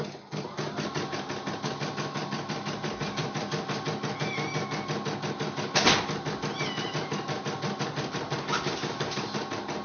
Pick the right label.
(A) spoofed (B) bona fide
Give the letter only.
B